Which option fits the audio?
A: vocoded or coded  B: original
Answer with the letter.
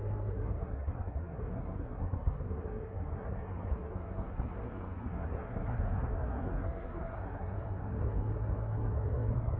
A